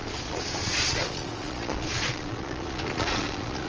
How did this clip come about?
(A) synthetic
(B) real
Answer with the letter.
A